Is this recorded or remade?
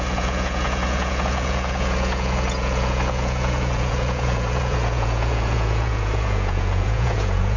remade